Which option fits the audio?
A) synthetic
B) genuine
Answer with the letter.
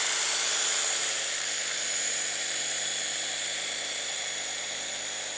A